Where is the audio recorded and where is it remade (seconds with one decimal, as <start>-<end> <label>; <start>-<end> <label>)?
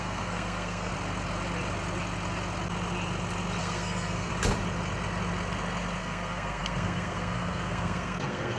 0.0-0.9 remade; 0.9-3.6 recorded; 3.6-4.3 remade; 4.3-6.0 recorded; 6.0-8.6 remade